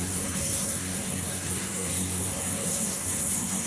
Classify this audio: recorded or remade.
remade